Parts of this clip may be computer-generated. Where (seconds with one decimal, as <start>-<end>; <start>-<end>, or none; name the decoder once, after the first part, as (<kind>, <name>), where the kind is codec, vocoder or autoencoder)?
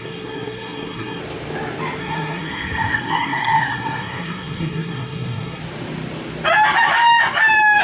0.0-1.2 (codec, SNAC); 2.0-5.6